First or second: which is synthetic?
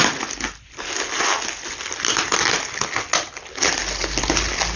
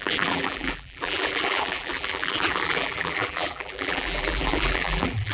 second